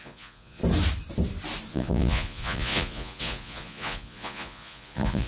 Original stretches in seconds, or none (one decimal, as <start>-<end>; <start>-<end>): 0.6-1.7